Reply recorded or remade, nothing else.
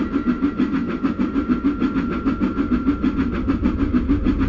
recorded